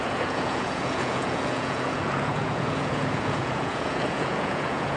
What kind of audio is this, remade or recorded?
remade